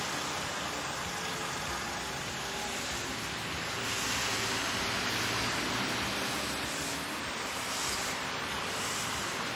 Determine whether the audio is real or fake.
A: real